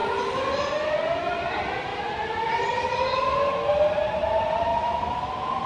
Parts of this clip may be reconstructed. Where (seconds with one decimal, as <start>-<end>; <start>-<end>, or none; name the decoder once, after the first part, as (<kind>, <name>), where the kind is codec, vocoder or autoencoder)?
4.7-5.3 (autoencoder, DAC-VAE)